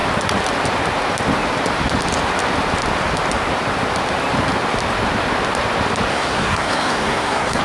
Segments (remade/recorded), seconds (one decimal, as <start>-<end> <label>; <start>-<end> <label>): 0.0-6.1 recorded; 6.1-7.6 remade